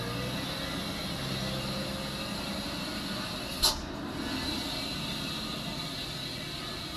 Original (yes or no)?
yes